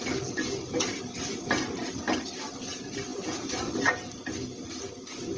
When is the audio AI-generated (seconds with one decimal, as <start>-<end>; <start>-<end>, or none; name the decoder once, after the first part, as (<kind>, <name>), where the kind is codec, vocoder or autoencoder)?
3.1-3.7 (vocoder, Vocos)